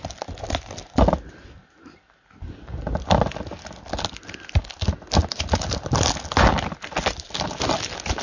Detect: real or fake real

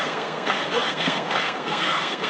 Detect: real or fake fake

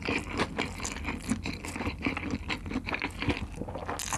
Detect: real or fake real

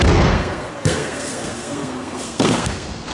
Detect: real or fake fake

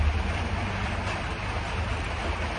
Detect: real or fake real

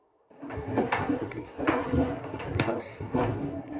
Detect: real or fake fake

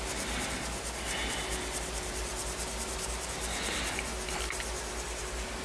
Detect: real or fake real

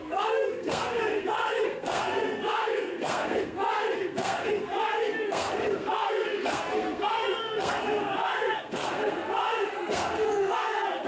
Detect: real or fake fake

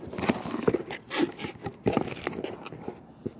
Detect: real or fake real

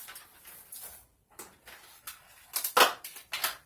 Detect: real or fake real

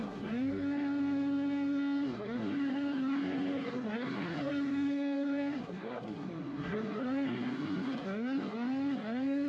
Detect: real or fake fake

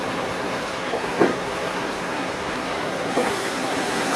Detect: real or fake fake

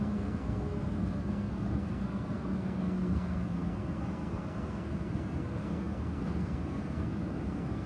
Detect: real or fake fake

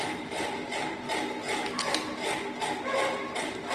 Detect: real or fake real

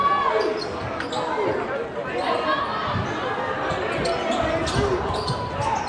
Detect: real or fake real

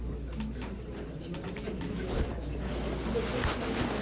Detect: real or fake real